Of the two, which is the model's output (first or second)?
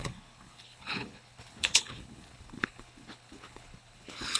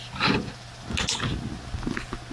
first